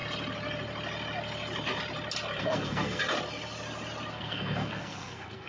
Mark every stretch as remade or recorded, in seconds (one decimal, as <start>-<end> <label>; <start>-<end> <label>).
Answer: 0.0-2.4 recorded; 2.4-3.0 remade; 3.0-4.1 recorded; 4.1-5.5 remade